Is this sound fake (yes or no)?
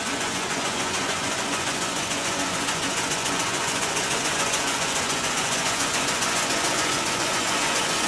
yes